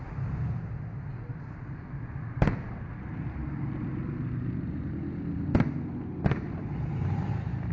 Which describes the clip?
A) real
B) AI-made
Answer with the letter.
B